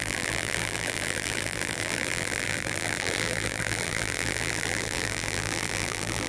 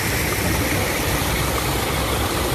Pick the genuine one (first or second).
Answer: second